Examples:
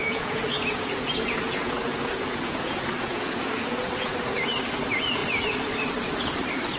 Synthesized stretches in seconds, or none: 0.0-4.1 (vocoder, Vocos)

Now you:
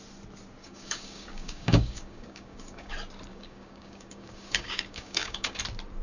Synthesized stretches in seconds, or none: 0.6-2.9 (codec, DAC); 3.3-5.6

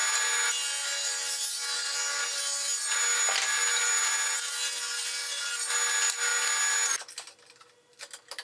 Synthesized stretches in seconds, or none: none

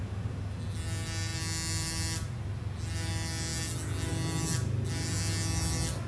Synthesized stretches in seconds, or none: none